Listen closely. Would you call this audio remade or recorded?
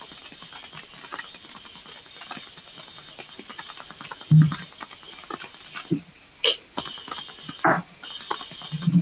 recorded